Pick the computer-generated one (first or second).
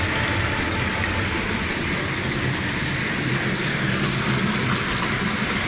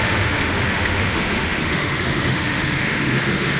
second